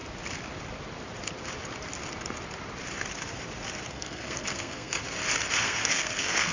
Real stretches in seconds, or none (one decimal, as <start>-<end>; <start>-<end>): 0.0-3.9; 5.0-5.6